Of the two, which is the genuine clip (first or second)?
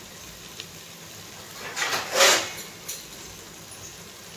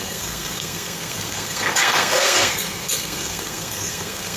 first